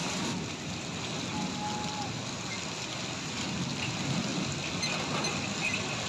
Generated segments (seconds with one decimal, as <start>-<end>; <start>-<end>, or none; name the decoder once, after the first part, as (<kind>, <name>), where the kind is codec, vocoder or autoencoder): none